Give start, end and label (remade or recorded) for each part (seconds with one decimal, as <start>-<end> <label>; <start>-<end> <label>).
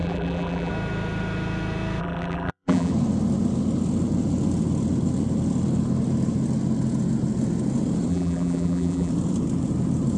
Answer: 0.0-0.7 remade; 0.7-2.0 recorded; 2.0-2.9 remade; 2.9-8.1 recorded; 8.1-9.1 remade; 9.1-10.2 recorded